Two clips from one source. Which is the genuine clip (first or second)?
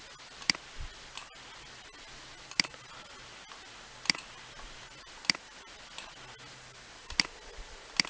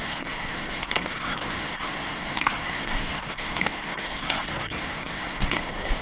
first